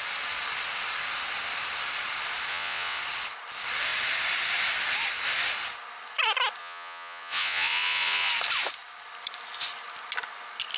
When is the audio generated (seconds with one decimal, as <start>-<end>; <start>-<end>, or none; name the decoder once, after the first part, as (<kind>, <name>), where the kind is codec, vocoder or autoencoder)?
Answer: 2.5-3.0 (vocoder, Vocos); 6.6-8.3